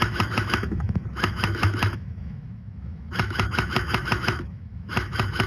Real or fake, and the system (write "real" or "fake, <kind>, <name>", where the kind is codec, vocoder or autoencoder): fake, autoencoder, DAC-VAE